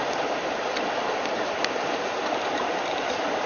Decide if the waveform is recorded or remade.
remade